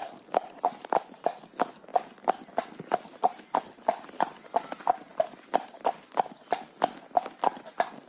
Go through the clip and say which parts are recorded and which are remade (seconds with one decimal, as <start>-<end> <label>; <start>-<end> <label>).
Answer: 0.0-8.1 recorded